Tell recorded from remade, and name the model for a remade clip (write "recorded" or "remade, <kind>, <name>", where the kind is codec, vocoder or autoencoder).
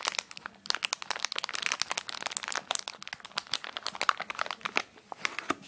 recorded